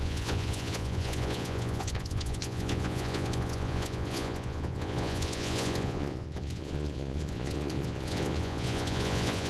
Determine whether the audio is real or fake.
fake